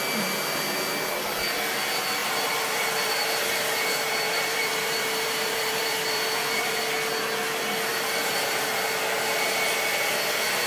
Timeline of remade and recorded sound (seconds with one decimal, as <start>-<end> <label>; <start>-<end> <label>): 0.0-2.2 recorded; 2.2-6.7 remade; 6.7-7.9 recorded; 7.9-9.0 remade; 9.0-10.7 recorded